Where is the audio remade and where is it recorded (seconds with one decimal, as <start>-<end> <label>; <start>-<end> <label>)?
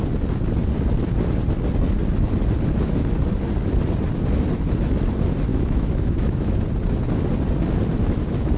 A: 0.0-5.5 recorded; 5.5-6.6 remade; 6.6-8.6 recorded